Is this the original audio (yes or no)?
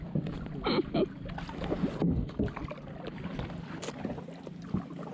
yes